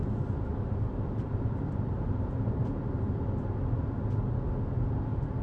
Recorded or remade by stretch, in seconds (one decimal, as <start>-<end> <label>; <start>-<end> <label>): 0.0-0.5 recorded; 0.5-3.6 remade; 3.6-5.4 recorded